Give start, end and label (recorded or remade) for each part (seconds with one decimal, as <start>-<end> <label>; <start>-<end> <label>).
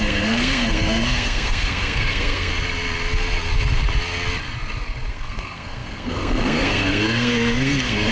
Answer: 0.0-2.5 remade; 2.5-5.1 recorded; 5.1-8.1 remade